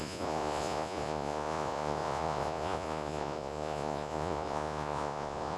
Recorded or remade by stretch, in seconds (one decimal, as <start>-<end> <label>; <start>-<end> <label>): 0.0-5.6 remade